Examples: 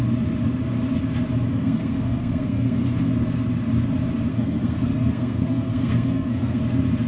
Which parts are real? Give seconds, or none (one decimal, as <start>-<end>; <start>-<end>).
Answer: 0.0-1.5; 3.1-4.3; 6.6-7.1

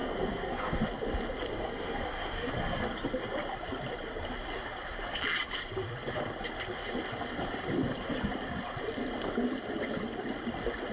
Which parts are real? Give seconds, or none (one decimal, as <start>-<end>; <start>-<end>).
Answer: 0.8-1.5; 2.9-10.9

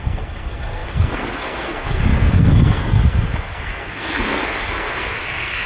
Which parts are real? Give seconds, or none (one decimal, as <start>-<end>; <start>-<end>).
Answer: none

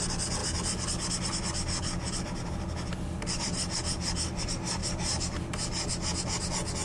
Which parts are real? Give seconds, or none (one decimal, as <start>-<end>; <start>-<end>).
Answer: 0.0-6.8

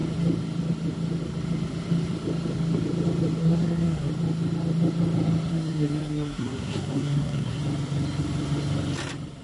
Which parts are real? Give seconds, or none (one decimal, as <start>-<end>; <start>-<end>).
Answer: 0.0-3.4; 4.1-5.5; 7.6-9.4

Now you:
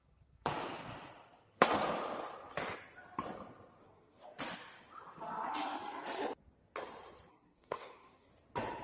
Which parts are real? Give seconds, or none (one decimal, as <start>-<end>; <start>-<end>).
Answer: 0.0-3.8; 4.4-7.3; 8.3-8.8

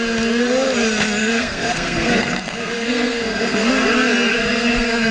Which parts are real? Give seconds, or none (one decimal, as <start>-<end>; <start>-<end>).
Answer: 0.0-1.2; 3.7-4.3

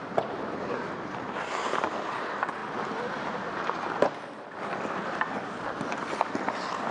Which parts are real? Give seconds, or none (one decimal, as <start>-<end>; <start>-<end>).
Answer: 0.0-6.9